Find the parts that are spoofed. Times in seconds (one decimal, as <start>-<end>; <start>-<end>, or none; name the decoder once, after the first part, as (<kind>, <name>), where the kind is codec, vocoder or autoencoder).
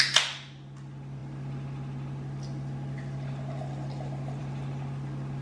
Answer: none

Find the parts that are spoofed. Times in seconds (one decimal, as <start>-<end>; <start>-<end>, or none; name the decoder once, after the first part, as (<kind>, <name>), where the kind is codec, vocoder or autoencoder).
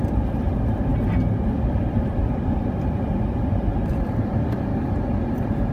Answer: 0.0-0.9 (vocoder, BigVGAN v2); 1.5-4.7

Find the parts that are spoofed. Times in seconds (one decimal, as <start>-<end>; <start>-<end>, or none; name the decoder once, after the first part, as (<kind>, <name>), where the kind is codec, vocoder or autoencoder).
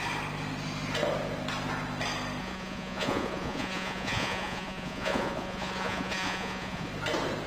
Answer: 2.4-6.9 (vocoder, Vocos)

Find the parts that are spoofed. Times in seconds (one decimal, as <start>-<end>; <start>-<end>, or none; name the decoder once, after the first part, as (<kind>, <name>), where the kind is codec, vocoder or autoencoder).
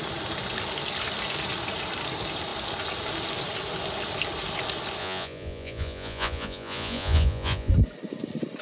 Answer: 5.0-7.7 (vocoder, Vocos)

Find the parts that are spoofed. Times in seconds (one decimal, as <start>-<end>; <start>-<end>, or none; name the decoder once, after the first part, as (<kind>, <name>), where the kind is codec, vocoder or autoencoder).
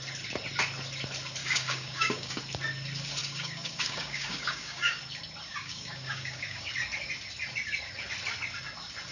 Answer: 1.4-2.4 (codec, DAC); 3.2-5.0; 5.5-6.7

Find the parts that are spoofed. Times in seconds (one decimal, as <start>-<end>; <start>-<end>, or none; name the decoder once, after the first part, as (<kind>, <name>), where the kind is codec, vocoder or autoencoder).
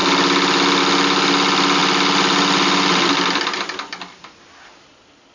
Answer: none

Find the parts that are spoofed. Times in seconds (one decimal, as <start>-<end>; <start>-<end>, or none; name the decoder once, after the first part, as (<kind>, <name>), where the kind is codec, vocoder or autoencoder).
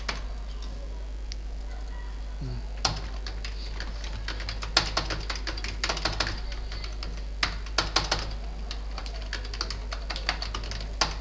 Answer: none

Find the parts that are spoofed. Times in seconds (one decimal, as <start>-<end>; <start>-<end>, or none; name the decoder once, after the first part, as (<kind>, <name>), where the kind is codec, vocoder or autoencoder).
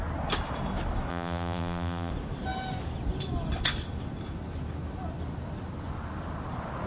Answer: 1.1-2.1 (vocoder, BigVGAN v2)